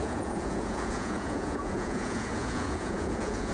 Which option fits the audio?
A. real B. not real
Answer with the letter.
B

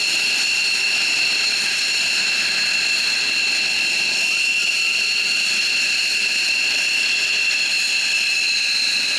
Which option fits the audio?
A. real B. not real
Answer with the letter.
A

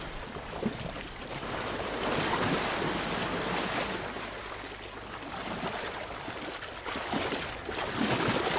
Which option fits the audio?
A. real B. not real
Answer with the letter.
A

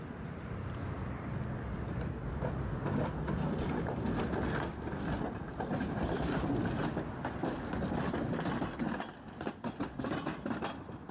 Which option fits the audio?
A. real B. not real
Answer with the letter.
A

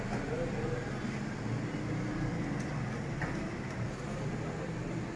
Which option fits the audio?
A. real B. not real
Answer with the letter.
A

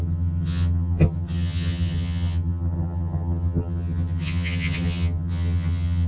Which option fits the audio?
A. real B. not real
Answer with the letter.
B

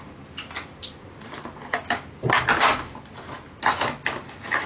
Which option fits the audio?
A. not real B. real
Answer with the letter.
B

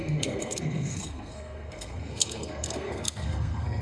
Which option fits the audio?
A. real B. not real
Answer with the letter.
B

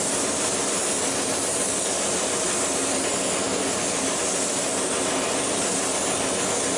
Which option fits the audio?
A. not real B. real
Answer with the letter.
B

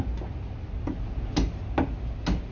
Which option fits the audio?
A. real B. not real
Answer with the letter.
A